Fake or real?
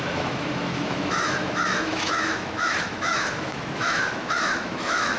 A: fake